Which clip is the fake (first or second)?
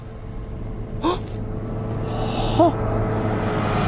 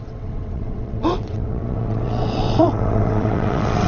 second